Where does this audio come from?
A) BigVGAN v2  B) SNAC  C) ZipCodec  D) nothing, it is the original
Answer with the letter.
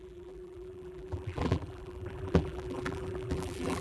A